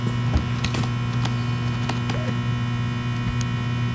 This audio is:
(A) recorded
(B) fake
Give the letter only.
A